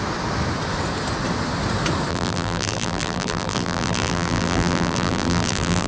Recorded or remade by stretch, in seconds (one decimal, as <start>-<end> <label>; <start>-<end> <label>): 0.0-2.1 recorded; 2.1-5.9 remade